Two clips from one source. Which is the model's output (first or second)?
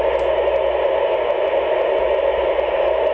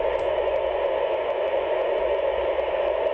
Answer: second